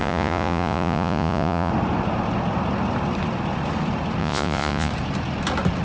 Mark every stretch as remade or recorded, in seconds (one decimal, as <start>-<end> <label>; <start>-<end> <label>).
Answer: 0.0-1.7 remade; 1.7-4.2 recorded; 4.2-4.9 remade; 4.9-5.8 recorded